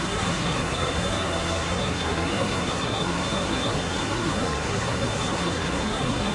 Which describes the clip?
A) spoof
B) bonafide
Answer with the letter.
A